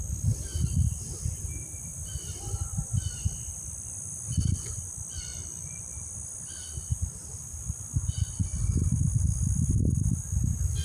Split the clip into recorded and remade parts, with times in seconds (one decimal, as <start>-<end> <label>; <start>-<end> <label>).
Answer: 0.0-3.5 recorded; 3.5-4.7 remade; 4.7-8.4 recorded; 8.4-9.0 remade; 9.0-10.8 recorded